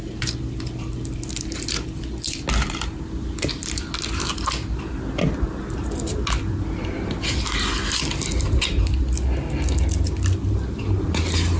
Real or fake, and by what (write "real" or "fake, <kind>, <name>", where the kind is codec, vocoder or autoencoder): real